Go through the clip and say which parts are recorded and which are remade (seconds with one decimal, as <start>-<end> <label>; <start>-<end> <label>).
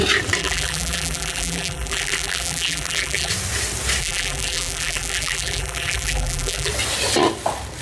0.0-0.4 recorded; 0.4-3.3 remade; 3.3-4.0 recorded; 4.0-6.7 remade; 6.7-7.8 recorded